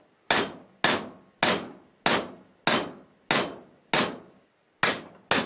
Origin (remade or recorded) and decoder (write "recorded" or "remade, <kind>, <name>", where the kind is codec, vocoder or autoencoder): recorded